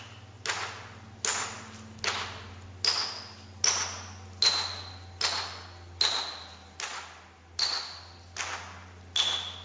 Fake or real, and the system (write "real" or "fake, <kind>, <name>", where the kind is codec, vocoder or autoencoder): real